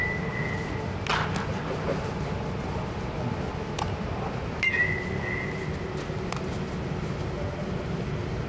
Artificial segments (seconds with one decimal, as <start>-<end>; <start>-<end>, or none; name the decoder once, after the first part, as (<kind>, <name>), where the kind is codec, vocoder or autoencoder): none